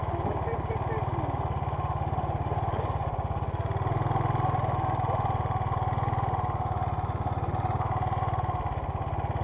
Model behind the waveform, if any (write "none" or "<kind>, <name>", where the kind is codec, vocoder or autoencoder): none